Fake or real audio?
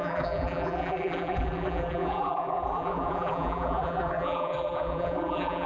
fake